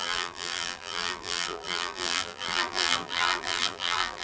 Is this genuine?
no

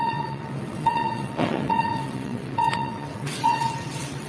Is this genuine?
no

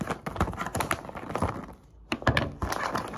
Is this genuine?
yes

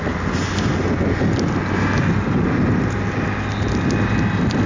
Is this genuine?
yes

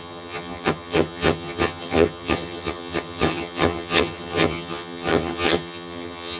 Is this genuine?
no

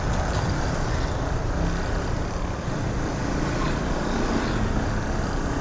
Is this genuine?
yes